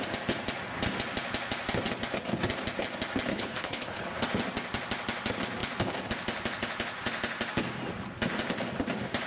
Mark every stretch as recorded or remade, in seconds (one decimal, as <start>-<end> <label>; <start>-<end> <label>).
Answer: 0.0-3.3 recorded; 3.3-4.1 remade; 4.1-9.3 recorded

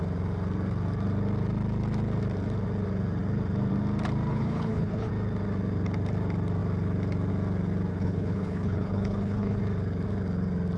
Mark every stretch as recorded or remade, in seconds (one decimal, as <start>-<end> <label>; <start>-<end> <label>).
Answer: 0.0-4.3 recorded; 4.3-5.1 remade; 5.1-7.9 recorded; 7.9-9.6 remade; 9.6-10.8 recorded